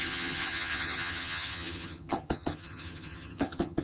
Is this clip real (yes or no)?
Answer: no